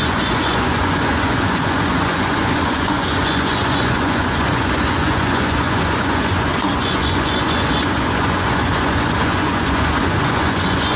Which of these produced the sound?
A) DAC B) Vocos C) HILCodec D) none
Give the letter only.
B